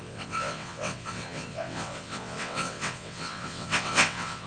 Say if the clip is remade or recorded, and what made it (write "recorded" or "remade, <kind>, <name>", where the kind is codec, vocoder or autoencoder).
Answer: remade, vocoder, WaveNeXt